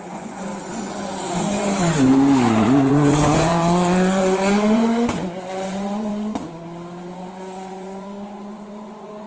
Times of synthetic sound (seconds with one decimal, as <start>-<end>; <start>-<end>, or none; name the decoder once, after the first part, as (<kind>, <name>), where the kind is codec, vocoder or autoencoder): 0.0-0.5 (vocoder, Vocos); 2.9-3.5; 4.2-6.1; 7.3-9.3